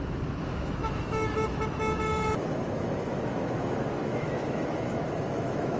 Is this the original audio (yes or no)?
no